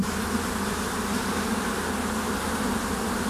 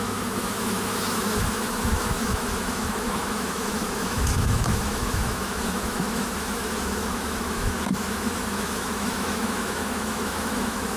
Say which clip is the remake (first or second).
second